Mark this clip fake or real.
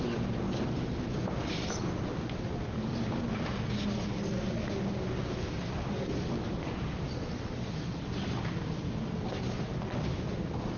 real